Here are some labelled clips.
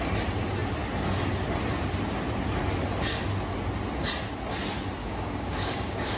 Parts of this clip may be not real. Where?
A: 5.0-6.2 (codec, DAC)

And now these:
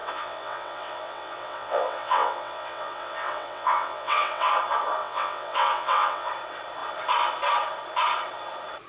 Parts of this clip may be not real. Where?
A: 0.0-4.5 (vocoder, WaveNeXt); 5.0-6.3